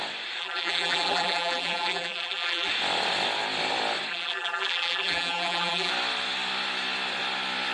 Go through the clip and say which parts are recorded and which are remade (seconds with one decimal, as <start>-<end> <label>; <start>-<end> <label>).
0.0-0.4 recorded; 0.4-2.7 remade; 2.7-4.1 recorded; 4.1-5.9 remade; 5.9-7.7 recorded